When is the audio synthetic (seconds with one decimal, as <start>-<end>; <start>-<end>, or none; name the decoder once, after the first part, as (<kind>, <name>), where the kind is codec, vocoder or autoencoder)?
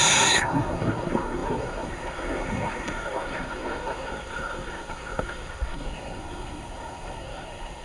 0.0-7.8 (codec, SNAC)